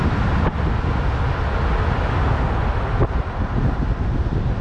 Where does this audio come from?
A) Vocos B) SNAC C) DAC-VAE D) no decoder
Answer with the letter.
D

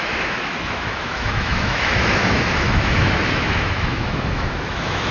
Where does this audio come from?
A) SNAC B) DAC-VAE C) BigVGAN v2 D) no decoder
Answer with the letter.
B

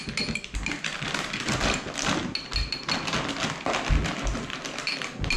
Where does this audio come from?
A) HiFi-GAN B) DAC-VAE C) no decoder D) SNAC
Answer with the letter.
C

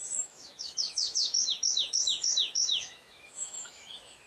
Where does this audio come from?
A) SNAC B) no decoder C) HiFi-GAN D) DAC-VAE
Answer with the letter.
D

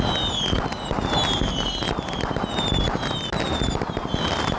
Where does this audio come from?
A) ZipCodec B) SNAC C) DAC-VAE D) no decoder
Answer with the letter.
D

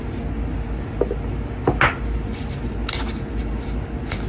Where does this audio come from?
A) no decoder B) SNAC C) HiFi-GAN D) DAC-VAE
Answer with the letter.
A